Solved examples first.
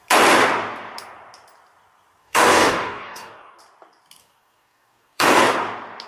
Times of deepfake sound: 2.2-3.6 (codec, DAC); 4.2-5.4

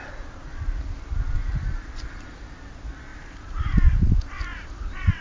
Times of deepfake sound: 0.5-1.9 (vocoder, BigVGAN v2); 3.1-4.2

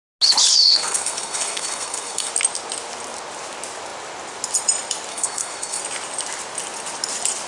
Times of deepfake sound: 0.6-2.3 (codec, SNAC); 5.1-5.8